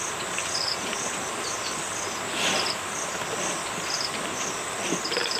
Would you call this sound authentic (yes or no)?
yes